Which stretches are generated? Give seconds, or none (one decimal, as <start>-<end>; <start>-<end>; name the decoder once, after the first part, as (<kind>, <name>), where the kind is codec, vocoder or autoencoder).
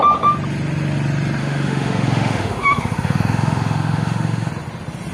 1.4-4.5 (autoencoder, DAC-VAE)